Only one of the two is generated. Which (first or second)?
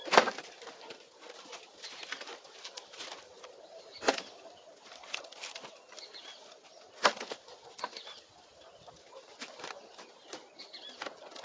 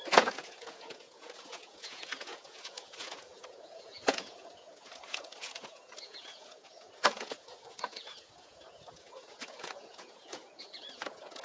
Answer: second